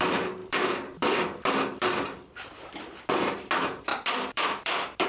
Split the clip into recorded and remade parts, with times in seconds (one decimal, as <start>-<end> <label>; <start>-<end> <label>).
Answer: 0.0-0.4 recorded; 0.4-3.5 remade; 3.5-3.9 recorded; 3.9-5.1 remade